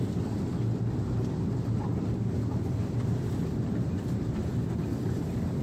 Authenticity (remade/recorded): remade